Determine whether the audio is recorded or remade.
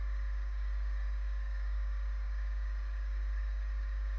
remade